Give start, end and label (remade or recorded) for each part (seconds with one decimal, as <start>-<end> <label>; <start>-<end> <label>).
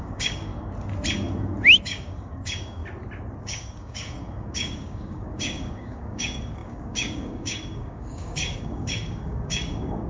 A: 0.0-0.5 remade; 0.5-1.8 recorded; 1.8-2.8 remade; 2.8-3.4 recorded; 3.4-10.1 remade